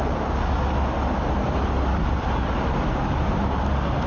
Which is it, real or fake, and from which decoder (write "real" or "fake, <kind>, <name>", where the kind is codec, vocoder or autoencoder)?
real